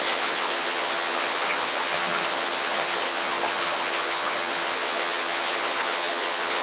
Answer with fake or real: fake